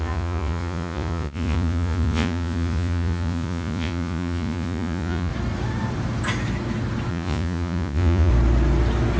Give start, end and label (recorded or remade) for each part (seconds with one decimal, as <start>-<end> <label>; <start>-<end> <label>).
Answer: 0.0-5.3 remade; 5.3-7.1 recorded; 7.1-8.3 remade; 8.3-9.2 recorded